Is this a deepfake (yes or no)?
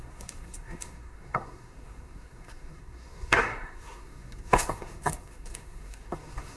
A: yes